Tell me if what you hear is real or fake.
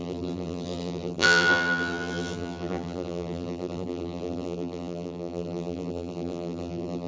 fake